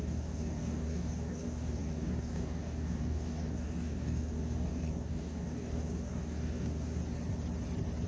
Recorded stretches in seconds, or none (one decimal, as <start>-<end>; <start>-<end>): 7.0-8.1